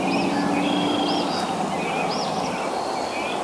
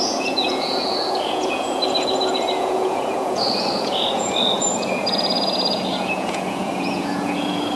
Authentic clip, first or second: first